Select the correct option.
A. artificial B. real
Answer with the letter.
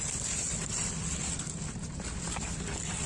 B